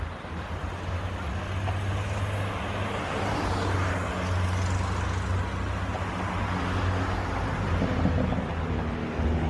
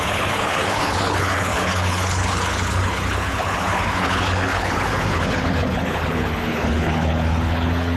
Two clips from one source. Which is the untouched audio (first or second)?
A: first